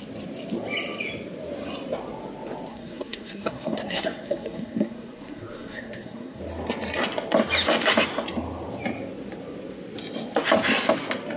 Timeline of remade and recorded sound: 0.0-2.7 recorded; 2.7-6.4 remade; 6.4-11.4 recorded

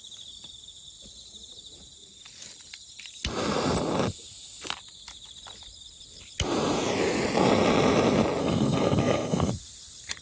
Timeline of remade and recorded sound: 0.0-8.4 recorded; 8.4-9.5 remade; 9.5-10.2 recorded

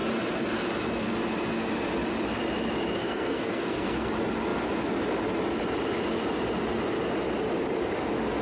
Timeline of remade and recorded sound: 0.0-3.0 recorded; 3.0-4.1 remade; 4.1-8.4 recorded